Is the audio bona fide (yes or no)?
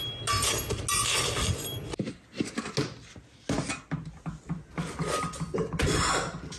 yes